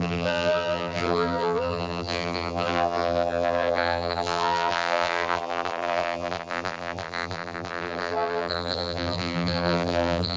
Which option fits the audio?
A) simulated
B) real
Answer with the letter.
A